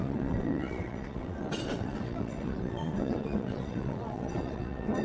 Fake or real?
fake